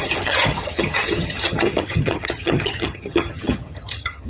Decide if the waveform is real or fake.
fake